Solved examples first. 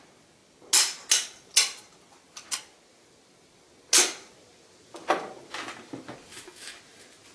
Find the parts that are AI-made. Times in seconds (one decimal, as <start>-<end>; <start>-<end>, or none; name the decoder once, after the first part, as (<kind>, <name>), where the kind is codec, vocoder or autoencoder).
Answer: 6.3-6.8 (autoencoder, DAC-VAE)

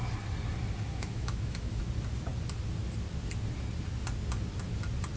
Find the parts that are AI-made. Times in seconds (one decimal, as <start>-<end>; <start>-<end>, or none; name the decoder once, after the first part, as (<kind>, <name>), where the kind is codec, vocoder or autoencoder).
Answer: 0.9-1.8 (autoencoder, DAC-VAE)

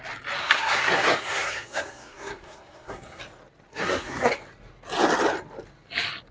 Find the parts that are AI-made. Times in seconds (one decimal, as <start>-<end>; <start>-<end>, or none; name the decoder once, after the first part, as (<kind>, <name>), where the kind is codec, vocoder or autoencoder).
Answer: 0.4-3.2 (codec, SNAC); 3.7-4.3

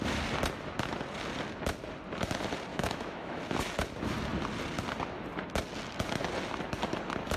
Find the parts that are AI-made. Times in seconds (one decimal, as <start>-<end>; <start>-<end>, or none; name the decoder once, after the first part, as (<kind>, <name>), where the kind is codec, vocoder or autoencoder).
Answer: 2.7-3.4 (autoencoder, DAC-VAE)

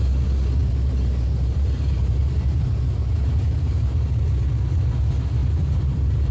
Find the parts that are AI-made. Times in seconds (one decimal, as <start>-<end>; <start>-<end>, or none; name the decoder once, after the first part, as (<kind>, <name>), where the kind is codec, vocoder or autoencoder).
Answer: 0.6-4.4 (vocoder, BigVGAN v2); 5.4-6.3